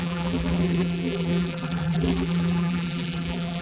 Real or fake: fake